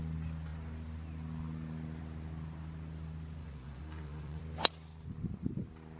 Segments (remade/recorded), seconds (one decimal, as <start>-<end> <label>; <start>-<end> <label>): 0.0-3.4 recorded; 3.4-4.4 remade; 4.4-6.0 recorded